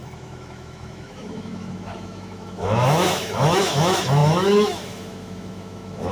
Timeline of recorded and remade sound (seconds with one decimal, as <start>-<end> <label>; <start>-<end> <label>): 0.0-6.1 remade